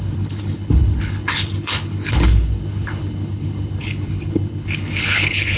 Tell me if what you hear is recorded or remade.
remade